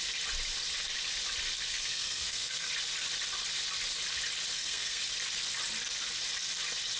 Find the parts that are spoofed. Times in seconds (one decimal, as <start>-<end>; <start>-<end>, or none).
1.7-2.7; 4.5-5.0